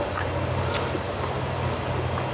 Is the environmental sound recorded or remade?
recorded